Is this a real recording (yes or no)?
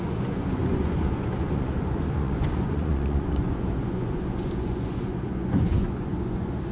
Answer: no